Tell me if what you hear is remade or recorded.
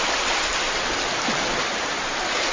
recorded